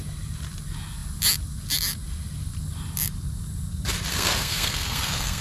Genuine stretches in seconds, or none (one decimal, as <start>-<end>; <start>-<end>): 0.0-4.1